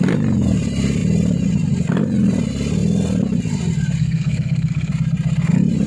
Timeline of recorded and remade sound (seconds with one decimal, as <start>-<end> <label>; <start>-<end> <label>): 0.0-4.0 recorded; 4.0-4.9 remade; 4.9-5.9 recorded